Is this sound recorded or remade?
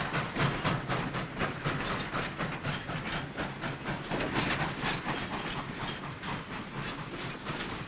recorded